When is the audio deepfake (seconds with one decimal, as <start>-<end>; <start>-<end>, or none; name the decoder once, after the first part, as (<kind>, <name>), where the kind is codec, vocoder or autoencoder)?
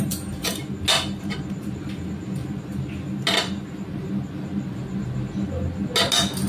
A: 0.0-0.6 (vocoder, BigVGAN v2); 1.2-2.4